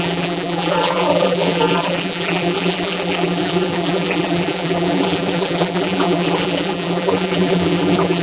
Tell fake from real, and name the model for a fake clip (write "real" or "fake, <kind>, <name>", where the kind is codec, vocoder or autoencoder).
fake, vocoder, BigVGAN v2